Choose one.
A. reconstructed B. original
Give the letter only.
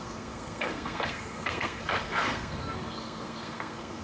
A